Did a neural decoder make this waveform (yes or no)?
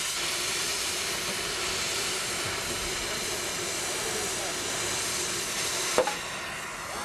no